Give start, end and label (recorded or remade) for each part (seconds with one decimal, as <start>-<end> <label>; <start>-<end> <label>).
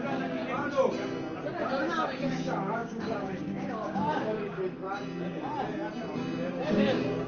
0.0-0.4 remade; 0.4-1.5 recorded; 1.5-4.6 remade; 4.6-6.5 recorded; 6.5-7.3 remade